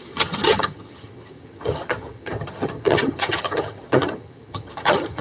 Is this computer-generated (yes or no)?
yes